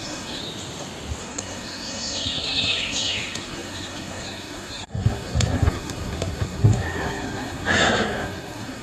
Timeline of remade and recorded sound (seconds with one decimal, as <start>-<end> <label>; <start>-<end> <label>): 0.0-0.4 remade; 0.4-1.2 recorded; 1.2-8.8 remade